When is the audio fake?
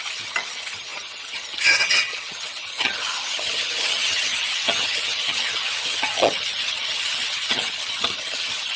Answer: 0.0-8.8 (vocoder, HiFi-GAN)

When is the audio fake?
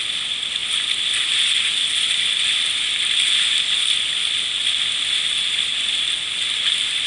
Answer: none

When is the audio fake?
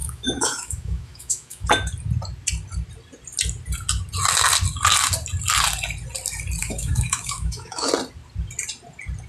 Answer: 0.0-1.7 (autoencoder, DAC-VAE); 6.6-7.9